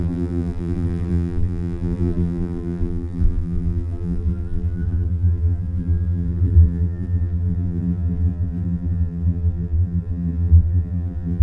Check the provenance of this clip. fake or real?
fake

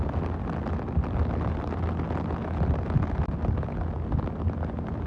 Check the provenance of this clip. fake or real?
real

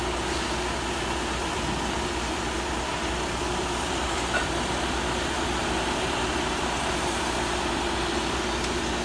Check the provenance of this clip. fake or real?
fake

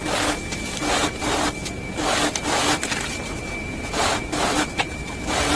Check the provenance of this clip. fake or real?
fake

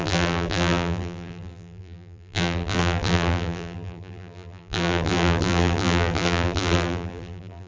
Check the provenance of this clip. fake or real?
fake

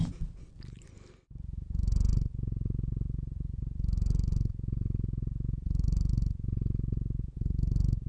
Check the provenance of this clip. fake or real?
real